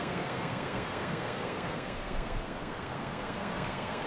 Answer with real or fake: fake